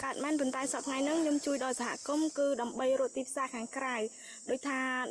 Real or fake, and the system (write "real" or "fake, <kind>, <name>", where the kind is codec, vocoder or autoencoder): real